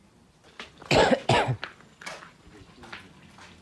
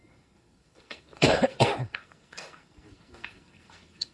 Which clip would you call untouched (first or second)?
first